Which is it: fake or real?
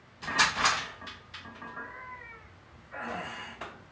real